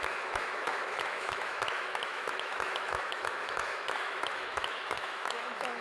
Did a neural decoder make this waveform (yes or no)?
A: yes